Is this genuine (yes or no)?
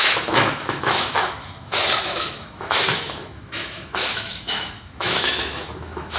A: no